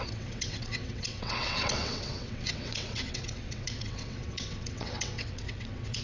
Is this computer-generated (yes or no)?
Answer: yes